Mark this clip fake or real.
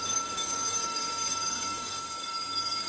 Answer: fake